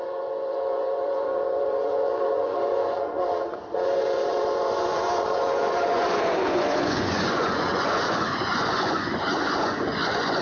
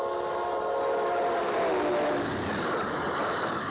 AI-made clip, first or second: first